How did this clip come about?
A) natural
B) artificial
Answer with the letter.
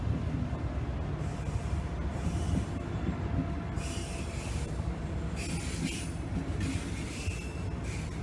A